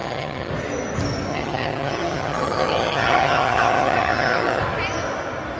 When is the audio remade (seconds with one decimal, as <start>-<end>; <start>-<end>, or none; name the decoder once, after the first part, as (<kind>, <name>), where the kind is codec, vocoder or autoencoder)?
0.0-0.5 (vocoder, HiFi-GAN); 1.3-4.6